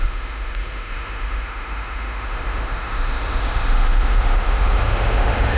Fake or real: fake